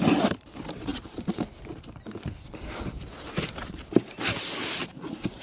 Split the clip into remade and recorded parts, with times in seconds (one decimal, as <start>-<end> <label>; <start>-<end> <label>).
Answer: 0.0-0.9 remade; 0.9-3.5 recorded; 3.5-5.4 remade